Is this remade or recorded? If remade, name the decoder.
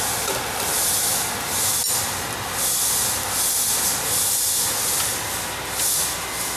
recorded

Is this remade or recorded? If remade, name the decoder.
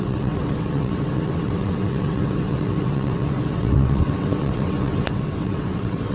remade, vocoder, WaveNeXt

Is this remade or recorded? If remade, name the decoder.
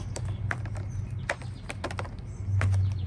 recorded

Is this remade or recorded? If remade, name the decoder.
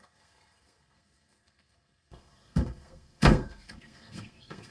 remade, codec, SNAC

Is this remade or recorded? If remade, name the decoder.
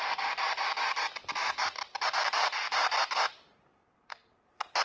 recorded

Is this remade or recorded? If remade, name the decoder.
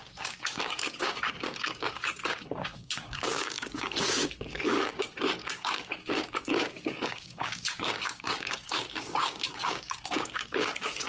remade, codec, DAC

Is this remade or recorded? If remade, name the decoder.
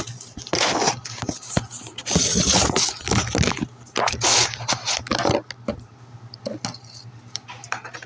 recorded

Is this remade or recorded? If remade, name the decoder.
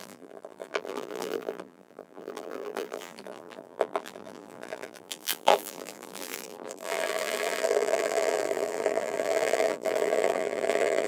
remade, vocoder, BigVGAN v2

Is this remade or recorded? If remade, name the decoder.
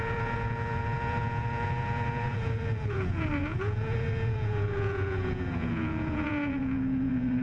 remade, vocoder, Vocos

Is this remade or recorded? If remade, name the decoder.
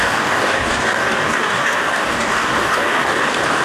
remade, codec, DAC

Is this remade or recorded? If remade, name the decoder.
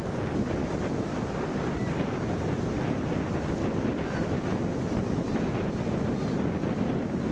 recorded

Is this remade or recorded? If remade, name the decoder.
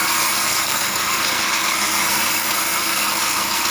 remade, codec, SNAC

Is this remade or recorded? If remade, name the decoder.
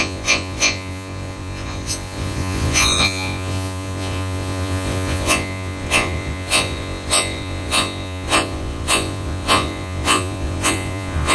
remade, vocoder, Vocos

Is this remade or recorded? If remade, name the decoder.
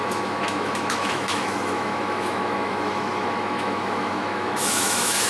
remade, autoencoder, DAC-VAE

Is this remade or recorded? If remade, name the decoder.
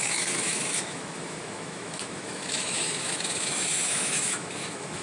remade, autoencoder, DAC-VAE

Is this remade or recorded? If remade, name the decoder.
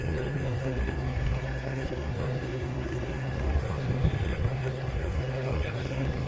remade, codec, SNAC